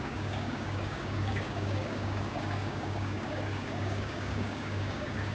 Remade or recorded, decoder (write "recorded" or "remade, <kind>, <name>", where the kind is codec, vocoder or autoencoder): remade, codec, DAC